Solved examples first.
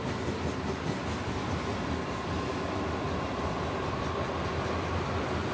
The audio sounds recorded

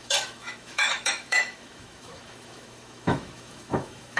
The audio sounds remade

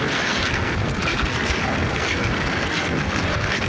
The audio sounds remade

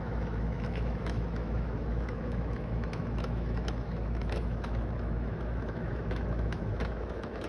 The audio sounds remade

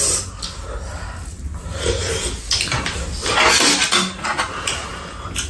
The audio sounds recorded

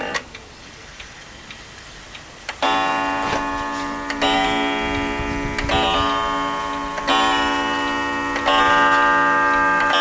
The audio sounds recorded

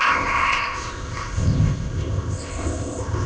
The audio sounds remade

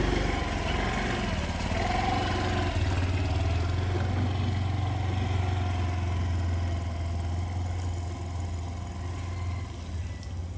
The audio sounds recorded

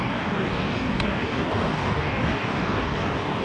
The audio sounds remade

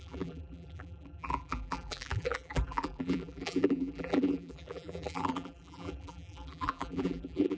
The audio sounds remade